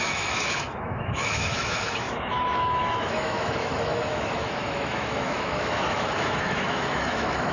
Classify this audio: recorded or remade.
remade